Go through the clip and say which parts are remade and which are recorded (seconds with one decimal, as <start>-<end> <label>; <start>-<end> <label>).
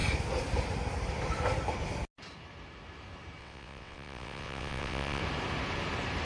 0.0-3.4 recorded; 3.4-5.2 remade; 5.2-6.2 recorded